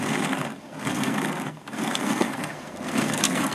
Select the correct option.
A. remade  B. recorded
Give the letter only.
A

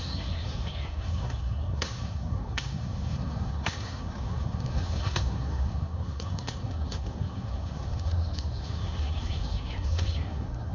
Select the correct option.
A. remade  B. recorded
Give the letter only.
A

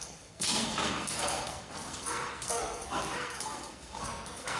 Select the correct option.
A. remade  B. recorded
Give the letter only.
A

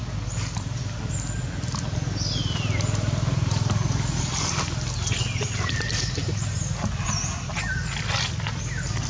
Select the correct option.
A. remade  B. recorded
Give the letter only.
B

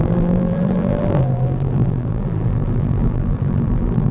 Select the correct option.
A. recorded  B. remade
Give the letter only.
B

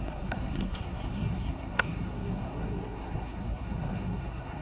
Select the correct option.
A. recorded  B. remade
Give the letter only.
B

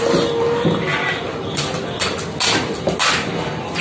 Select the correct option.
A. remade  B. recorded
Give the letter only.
B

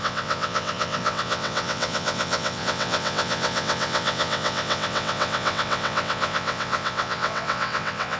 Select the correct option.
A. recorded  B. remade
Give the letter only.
B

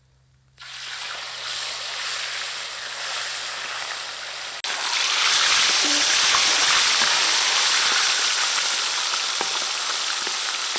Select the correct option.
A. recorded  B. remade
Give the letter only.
A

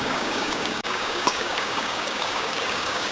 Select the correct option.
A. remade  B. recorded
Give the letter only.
A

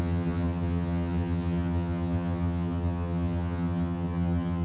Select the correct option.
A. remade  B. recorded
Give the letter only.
A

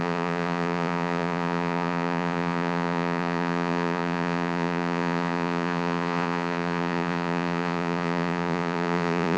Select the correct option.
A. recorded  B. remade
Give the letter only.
B